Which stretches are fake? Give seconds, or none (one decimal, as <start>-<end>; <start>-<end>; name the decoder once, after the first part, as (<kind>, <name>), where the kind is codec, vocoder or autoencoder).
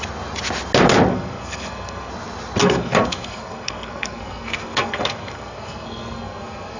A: 1.1-2.1 (codec, SNAC); 2.6-6.8